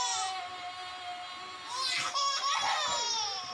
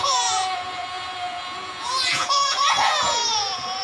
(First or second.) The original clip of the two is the first